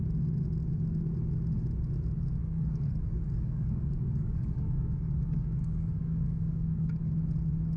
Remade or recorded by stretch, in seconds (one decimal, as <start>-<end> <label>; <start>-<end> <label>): 0.0-2.4 recorded; 2.4-7.1 remade; 7.1-7.8 recorded